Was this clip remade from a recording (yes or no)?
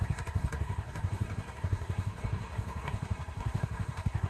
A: yes